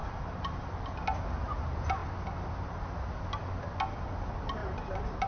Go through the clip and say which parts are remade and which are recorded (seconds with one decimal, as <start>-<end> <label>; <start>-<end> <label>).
0.0-0.7 remade; 0.7-4.6 recorded; 4.6-5.3 remade